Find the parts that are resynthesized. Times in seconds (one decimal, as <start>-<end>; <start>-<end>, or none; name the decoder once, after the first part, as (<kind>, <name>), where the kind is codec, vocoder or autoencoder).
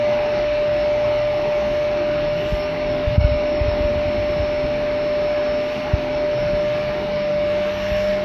0.0-3.9 (codec, DAC); 5.8-8.2